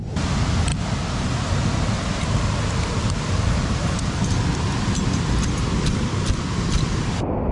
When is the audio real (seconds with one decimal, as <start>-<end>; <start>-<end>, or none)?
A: 0.0-0.7; 4.2-7.5